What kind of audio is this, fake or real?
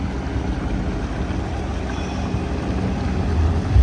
real